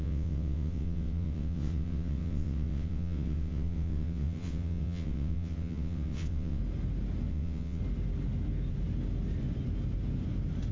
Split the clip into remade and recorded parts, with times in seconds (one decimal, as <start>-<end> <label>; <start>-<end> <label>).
0.0-6.6 remade; 6.6-7.3 recorded; 7.3-7.8 remade; 7.8-10.7 recorded